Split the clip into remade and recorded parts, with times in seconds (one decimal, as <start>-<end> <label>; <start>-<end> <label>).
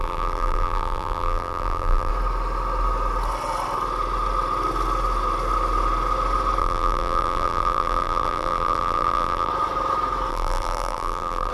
0.0-2.1 remade; 2.1-6.6 recorded; 6.6-9.5 remade; 9.5-10.3 recorded; 10.3-11.5 remade